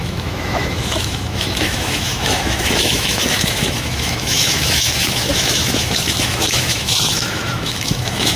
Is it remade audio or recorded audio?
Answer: remade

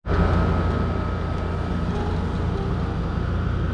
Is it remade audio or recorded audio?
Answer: recorded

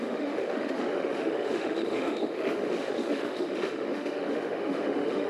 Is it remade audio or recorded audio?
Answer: remade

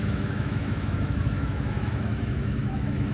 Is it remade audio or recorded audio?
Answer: remade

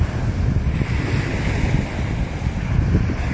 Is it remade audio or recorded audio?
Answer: recorded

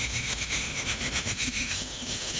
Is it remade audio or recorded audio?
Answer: remade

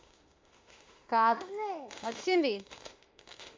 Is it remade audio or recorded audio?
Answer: remade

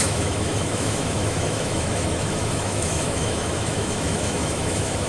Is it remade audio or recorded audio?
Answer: remade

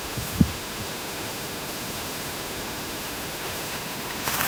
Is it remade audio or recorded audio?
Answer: remade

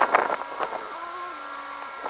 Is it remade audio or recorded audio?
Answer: recorded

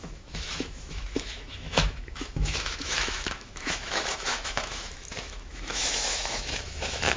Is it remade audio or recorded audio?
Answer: remade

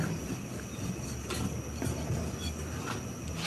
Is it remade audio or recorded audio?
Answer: recorded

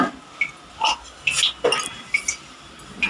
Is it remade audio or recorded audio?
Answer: recorded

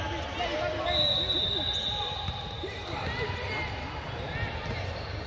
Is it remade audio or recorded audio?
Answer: recorded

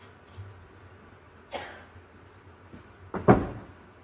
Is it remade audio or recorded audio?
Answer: recorded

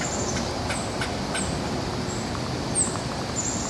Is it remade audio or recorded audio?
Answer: recorded